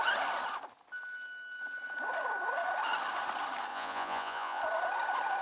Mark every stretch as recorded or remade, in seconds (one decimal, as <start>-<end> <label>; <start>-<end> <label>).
0.0-3.7 recorded; 3.7-4.6 remade; 4.6-5.4 recorded